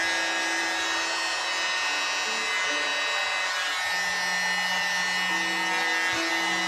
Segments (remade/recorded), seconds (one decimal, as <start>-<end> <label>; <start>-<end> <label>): 0.0-6.7 recorded